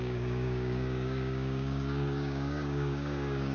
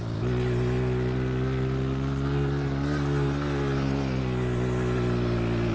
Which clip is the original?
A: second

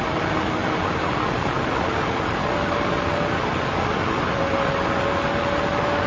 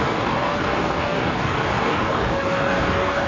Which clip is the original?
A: first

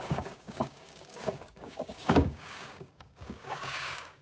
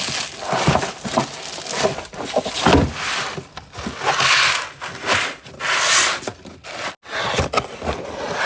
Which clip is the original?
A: second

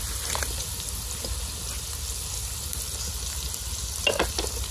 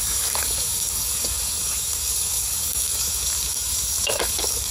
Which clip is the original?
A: first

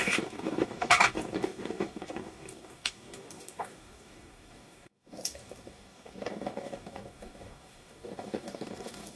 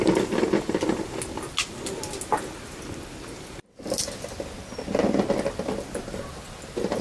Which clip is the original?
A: second